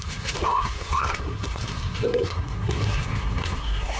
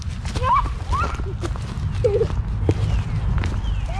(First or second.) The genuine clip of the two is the second